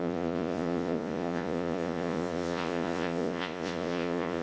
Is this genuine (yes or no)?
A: no